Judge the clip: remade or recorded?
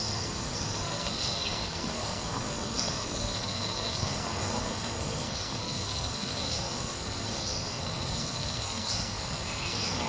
remade